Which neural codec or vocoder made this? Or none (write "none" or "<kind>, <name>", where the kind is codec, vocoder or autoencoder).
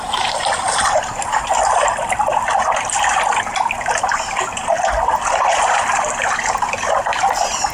none